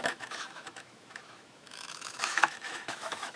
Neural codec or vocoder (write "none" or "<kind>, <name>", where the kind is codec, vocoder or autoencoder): autoencoder, DAC-VAE